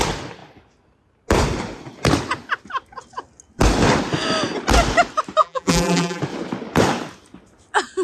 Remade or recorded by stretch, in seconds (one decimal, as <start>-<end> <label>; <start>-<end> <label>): 0.0-5.4 recorded; 5.4-6.2 remade; 6.2-8.0 recorded